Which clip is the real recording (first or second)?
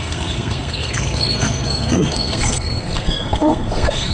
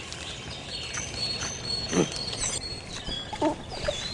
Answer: second